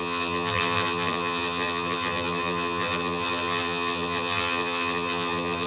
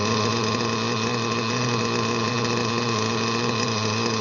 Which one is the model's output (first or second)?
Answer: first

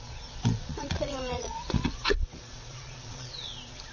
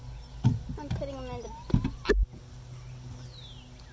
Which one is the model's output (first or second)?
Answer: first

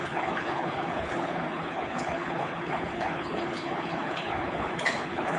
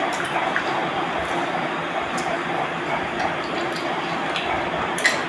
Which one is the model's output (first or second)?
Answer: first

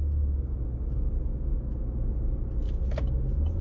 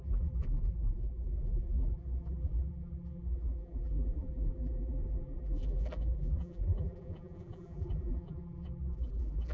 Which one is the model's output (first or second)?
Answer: second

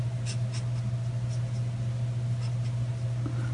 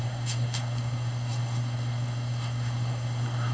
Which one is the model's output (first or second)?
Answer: second